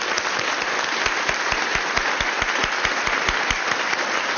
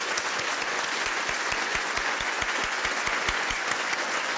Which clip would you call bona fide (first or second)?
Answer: first